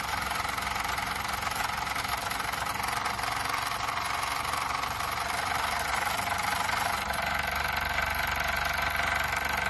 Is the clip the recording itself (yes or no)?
yes